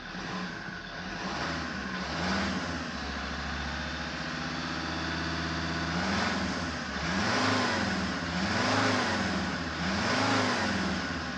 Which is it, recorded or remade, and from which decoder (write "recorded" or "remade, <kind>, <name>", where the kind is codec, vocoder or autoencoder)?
recorded